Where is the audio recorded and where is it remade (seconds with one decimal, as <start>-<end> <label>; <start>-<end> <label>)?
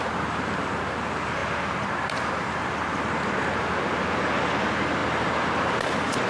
0.0-6.3 recorded